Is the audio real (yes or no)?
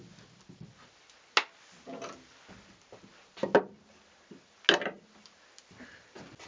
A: yes